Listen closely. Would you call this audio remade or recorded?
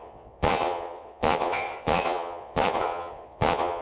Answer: remade